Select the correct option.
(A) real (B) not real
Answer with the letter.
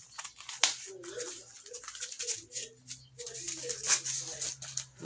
A